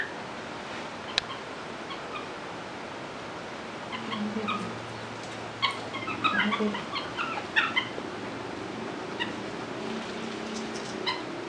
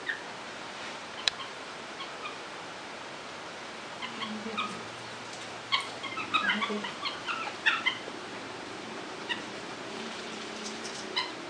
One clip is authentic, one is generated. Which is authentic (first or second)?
first